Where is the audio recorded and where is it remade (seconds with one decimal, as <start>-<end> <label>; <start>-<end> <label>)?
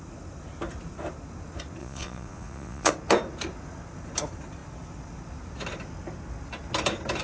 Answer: 0.0-1.8 recorded; 1.8-2.9 remade; 2.9-7.2 recorded